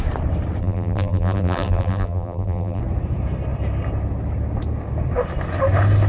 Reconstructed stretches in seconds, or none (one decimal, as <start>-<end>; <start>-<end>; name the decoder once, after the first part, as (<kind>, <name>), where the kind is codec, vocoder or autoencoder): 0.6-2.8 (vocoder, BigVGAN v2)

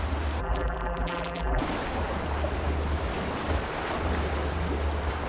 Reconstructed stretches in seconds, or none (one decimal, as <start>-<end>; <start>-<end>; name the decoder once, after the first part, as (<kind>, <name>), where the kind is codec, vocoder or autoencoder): 0.4-1.6 (vocoder, BigVGAN v2)

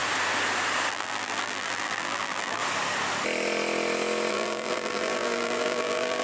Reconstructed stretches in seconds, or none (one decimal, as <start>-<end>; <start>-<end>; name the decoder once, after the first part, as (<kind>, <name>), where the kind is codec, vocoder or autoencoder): 0.9-2.6 (vocoder, BigVGAN v2); 4.3-6.2

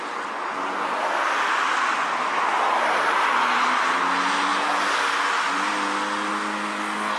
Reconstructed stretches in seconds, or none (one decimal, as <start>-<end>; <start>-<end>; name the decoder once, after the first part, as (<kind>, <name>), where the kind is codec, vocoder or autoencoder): none

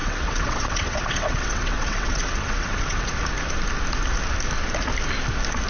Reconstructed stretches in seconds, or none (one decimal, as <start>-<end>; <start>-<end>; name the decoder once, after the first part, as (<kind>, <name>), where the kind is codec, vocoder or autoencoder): 0.0-3.1 (vocoder, WaveNeXt)

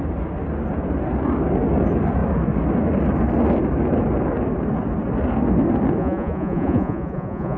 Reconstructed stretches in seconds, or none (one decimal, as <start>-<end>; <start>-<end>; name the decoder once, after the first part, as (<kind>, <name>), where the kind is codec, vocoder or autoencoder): 6.0-7.6 (vocoder, Vocos)